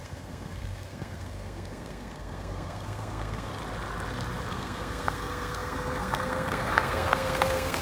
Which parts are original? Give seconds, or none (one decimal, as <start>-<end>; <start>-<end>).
3.5-4.5